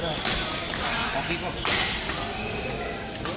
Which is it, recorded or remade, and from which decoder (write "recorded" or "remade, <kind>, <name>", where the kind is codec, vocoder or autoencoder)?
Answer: recorded